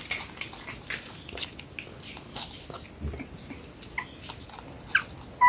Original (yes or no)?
yes